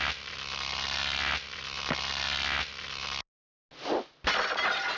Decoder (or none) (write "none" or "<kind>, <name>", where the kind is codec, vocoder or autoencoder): none